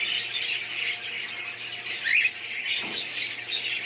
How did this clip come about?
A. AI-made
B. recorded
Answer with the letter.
B